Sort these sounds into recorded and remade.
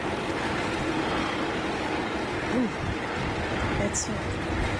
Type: recorded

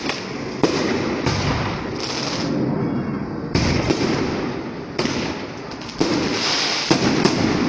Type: recorded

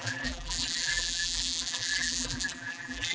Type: remade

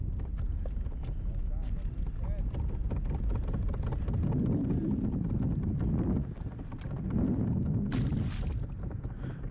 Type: recorded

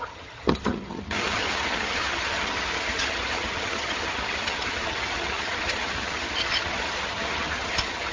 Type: remade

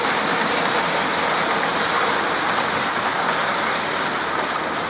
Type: recorded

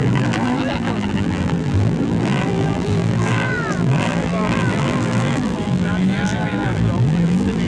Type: remade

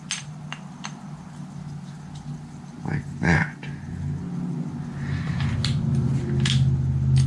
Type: recorded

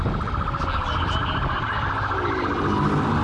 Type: recorded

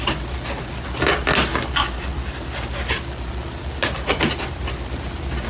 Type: recorded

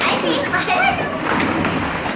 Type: recorded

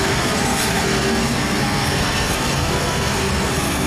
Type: remade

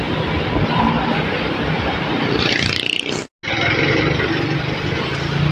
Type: recorded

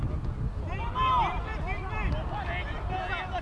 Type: recorded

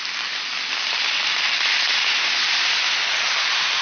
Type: recorded